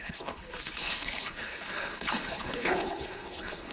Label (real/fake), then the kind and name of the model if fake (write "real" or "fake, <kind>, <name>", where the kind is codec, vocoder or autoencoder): fake, codec, HILCodec